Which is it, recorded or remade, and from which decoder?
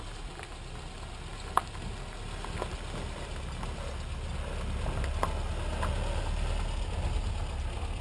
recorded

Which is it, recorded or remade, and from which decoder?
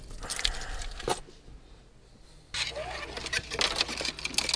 recorded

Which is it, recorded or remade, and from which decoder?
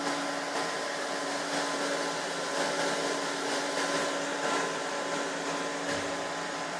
recorded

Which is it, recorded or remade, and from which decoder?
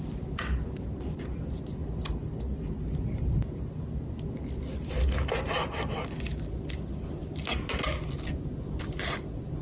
recorded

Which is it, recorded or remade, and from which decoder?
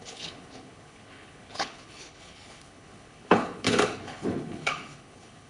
remade, codec, HILCodec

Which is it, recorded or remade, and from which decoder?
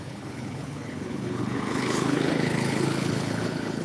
remade, codec, HILCodec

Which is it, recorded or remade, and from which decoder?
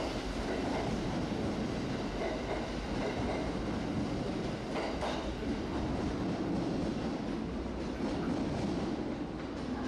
recorded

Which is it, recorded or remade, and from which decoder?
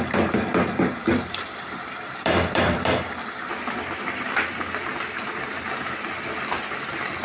remade, vocoder, BigVGAN v2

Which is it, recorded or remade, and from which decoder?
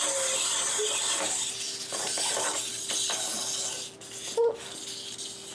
recorded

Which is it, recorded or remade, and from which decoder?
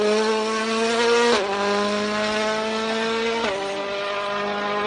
recorded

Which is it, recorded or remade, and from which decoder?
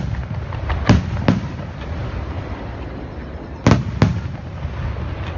recorded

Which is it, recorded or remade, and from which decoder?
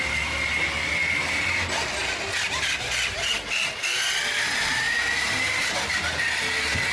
recorded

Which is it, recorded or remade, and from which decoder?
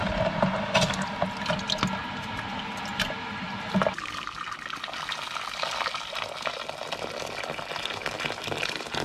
recorded